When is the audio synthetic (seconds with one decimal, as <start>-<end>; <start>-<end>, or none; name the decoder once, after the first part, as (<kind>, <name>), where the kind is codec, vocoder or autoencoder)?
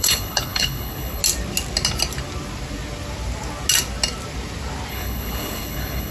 0.0-1.2 (codec, HILCodec); 4.9-6.1